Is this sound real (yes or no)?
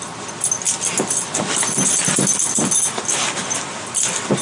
yes